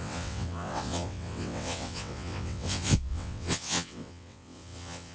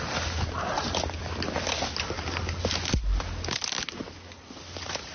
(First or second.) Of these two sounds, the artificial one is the first